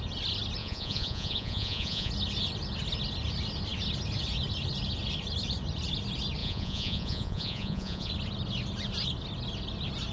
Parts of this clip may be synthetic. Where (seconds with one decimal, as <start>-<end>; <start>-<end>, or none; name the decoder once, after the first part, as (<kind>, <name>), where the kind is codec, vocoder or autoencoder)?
0.6-2.1 (vocoder, Vocos); 6.4-8.1